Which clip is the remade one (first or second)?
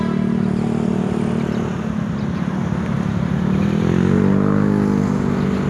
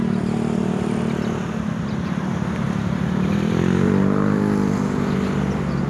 second